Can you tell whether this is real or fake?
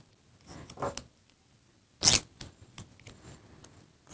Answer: real